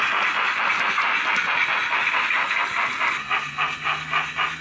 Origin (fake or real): real